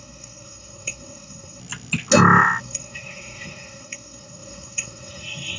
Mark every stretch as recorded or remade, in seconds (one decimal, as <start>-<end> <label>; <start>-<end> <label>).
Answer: 0.0-1.6 remade; 1.6-2.6 recorded; 2.6-5.6 remade